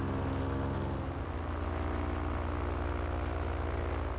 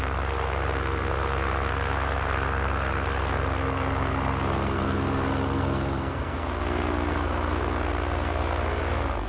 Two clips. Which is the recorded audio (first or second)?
first